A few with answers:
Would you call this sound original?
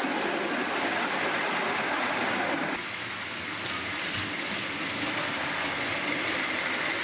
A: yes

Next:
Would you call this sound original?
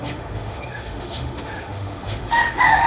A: no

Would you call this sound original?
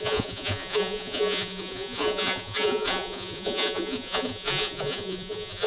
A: no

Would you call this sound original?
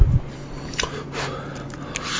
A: yes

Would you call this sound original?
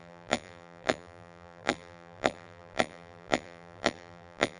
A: no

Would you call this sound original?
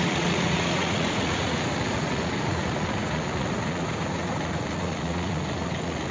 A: no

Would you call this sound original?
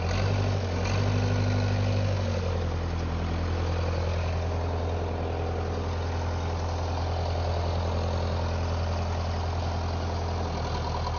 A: yes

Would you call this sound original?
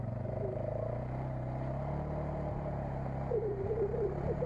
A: no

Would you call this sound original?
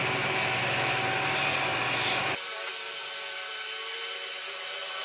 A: yes